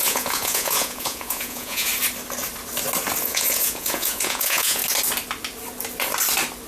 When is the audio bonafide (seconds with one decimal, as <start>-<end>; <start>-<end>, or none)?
1.9-3.2; 4.8-6.7